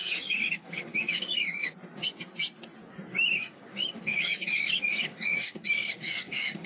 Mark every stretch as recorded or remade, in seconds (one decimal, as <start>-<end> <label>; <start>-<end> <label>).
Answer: 0.0-1.7 remade; 1.7-3.1 recorded; 3.1-6.7 remade